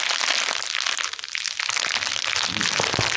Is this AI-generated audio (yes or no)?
no